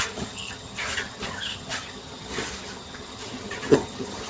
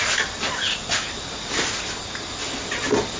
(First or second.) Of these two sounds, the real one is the second